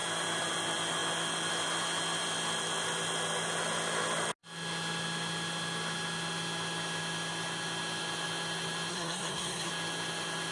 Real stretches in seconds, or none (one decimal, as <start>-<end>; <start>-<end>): 0.0-8.9; 9.7-10.5